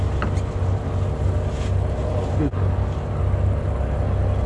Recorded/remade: recorded